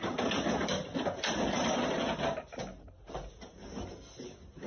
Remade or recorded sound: recorded